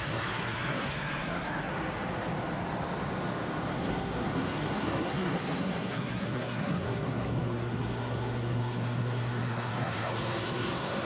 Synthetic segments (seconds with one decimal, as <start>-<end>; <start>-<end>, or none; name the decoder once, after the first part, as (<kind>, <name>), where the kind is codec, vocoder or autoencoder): 0.0-1.7 (codec, SNAC); 3.7-11.1